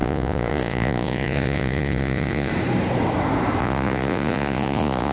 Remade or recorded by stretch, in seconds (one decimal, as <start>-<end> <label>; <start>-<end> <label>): 0.0-2.5 remade; 2.5-3.6 recorded; 3.6-5.1 remade